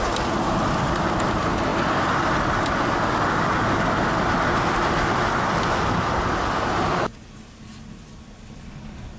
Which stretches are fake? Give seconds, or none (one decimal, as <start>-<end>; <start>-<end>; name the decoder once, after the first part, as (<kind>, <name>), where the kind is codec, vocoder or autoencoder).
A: none